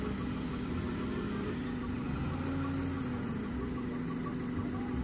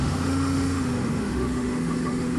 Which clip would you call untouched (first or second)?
first